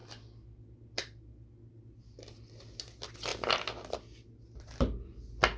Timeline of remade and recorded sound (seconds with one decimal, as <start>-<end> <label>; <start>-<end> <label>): 0.0-5.6 recorded